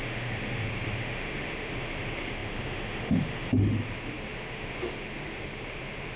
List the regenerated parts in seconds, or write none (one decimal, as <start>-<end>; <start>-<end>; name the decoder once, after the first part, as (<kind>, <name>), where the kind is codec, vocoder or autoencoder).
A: 0.0-6.2 (autoencoder, DAC-VAE)